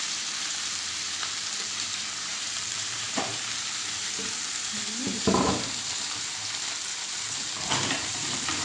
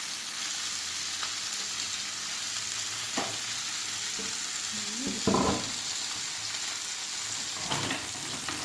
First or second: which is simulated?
first